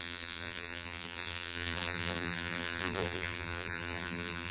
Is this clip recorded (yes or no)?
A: no